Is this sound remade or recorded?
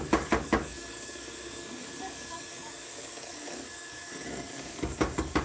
remade